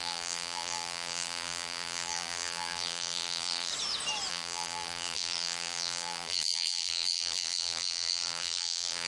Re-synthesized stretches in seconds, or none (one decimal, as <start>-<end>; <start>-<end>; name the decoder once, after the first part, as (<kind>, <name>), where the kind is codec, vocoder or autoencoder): 0.0-3.7 (vocoder, BigVGAN v2); 4.3-9.1